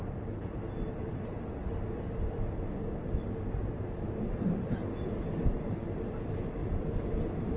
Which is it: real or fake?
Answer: real